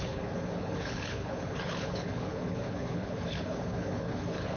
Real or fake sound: fake